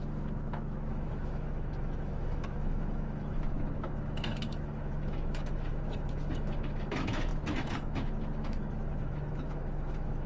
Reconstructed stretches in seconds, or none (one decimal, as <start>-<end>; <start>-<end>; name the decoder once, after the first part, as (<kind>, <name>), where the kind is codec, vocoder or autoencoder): 0.0-10.3 (autoencoder, DAC-VAE)